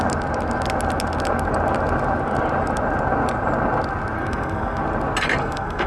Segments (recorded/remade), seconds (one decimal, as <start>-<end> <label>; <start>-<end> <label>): 0.0-4.2 recorded; 4.2-4.8 remade; 4.8-5.4 recorded; 5.4-5.9 remade

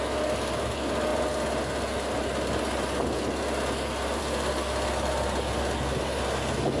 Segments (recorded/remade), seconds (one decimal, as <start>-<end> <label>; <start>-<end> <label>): 0.0-6.8 recorded